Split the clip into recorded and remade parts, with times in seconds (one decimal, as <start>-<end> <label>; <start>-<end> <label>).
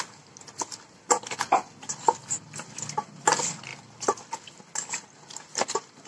0.0-6.1 recorded